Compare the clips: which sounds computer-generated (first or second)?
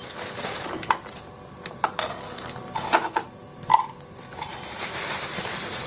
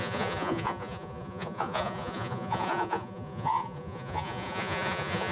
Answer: second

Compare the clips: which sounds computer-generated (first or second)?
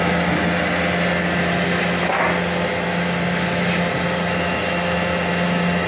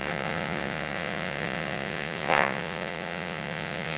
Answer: second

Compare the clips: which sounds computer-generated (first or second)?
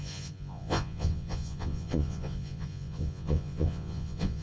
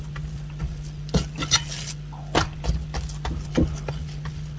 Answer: first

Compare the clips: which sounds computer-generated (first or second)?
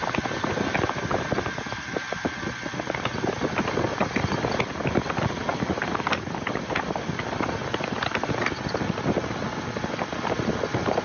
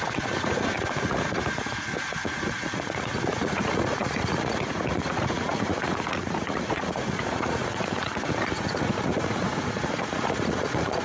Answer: second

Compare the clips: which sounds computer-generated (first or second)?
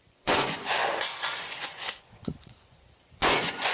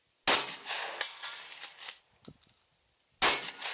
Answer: first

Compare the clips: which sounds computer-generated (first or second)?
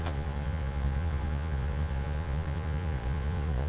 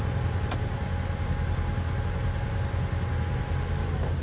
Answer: first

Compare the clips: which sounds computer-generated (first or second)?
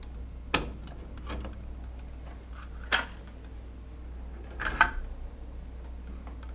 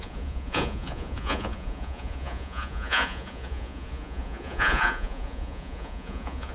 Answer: second